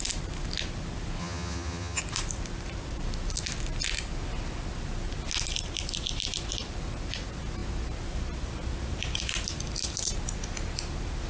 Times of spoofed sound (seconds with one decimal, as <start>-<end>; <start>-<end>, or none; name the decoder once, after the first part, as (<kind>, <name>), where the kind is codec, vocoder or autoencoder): 1.2-2.0 (vocoder, HiFi-GAN)